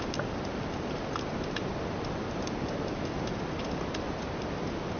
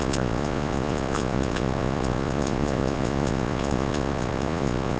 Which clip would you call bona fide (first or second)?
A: first